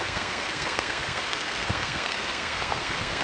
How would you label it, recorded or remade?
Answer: remade